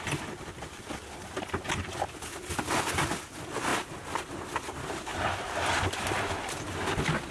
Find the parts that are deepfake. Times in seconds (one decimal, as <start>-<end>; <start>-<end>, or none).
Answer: 2.5-3.1; 5.1-6.3